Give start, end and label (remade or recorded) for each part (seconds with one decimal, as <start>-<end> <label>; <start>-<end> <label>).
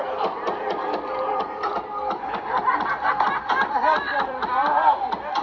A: 0.0-1.7 remade; 1.7-3.4 recorded; 3.4-5.4 remade